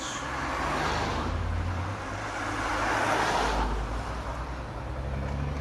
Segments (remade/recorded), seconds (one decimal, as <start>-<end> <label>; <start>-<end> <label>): 0.0-1.1 recorded; 1.1-2.7 remade; 2.7-5.6 recorded